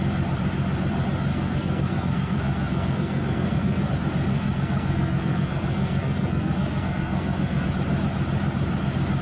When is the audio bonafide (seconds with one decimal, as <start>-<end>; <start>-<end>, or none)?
0.0-1.3; 3.9-4.3; 7.7-9.2